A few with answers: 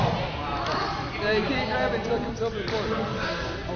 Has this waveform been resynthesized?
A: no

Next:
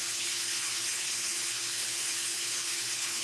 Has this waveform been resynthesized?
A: yes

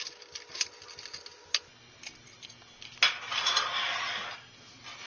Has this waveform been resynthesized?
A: no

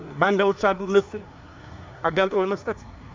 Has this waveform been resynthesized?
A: yes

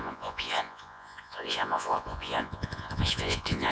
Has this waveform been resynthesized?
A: yes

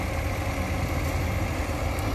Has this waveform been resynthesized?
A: no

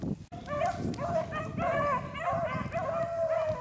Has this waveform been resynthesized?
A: no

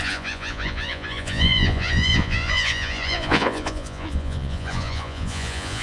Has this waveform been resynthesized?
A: yes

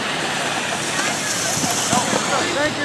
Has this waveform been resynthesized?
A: no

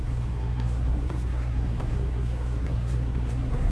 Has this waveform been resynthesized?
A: yes